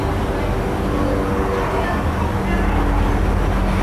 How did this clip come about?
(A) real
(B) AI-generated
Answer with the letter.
A